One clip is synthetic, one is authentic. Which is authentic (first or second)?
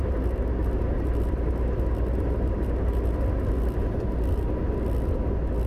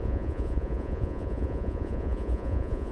first